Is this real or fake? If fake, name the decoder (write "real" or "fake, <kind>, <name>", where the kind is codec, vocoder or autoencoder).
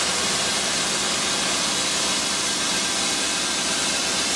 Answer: real